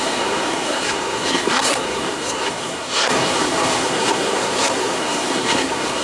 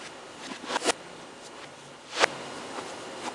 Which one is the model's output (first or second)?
first